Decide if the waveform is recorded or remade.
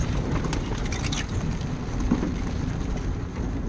recorded